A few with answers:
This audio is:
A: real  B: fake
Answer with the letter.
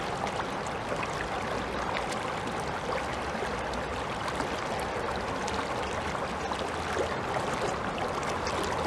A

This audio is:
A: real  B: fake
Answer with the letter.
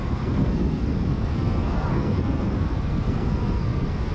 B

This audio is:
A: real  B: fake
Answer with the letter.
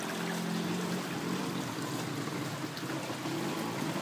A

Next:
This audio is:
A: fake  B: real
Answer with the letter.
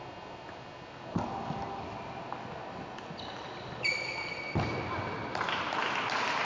B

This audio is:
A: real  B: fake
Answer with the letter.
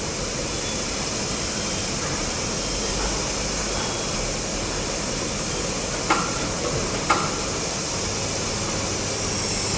A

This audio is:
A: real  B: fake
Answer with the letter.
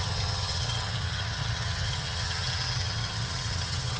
B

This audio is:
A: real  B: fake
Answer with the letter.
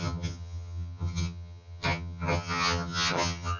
B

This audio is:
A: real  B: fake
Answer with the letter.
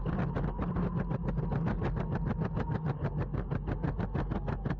A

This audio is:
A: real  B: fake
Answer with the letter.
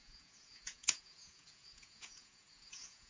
B